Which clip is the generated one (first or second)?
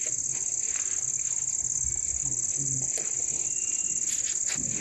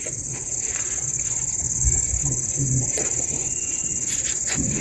second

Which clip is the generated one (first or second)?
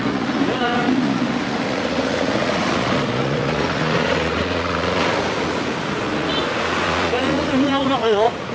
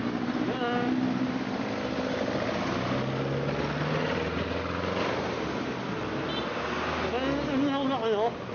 first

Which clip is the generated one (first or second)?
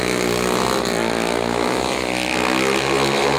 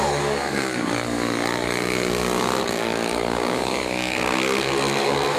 second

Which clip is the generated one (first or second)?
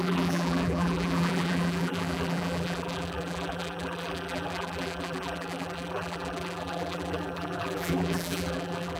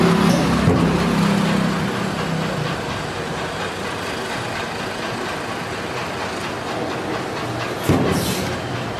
first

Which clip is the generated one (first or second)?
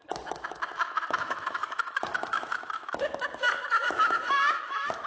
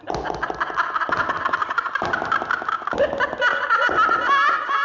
first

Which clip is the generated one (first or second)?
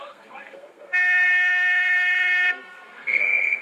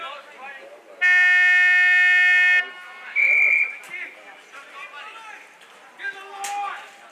first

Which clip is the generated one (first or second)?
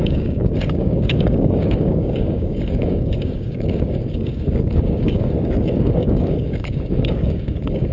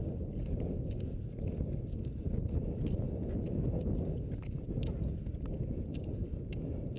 first